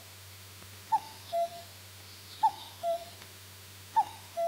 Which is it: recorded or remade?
remade